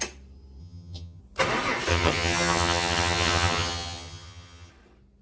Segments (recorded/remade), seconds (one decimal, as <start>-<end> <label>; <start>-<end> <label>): 0.0-0.6 recorded; 0.6-1.2 remade; 1.2-1.9 recorded; 1.9-4.7 remade; 4.7-5.2 recorded